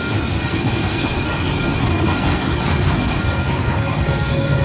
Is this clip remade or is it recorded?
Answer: remade